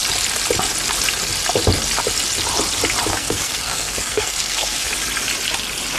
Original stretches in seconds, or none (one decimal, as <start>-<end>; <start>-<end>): 0.0-3.1; 4.9-6.0